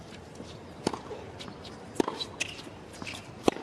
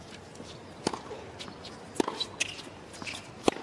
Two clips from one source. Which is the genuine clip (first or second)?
second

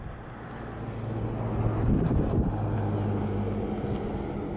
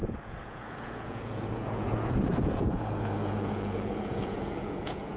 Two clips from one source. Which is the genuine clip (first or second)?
first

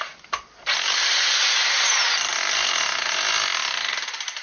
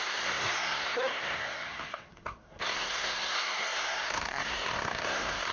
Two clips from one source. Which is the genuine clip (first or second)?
first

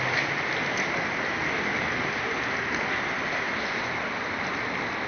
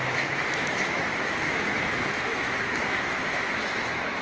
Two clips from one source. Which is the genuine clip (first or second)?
first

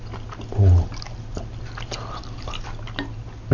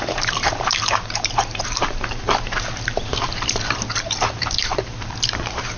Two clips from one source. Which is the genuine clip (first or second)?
first